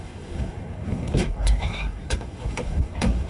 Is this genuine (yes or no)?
no